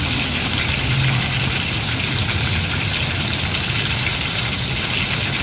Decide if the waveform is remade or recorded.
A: recorded